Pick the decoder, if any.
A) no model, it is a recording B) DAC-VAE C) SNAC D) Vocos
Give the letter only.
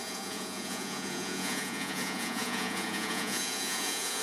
D